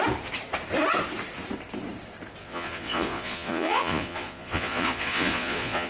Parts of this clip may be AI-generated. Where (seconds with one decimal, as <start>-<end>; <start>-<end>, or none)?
2.4-5.9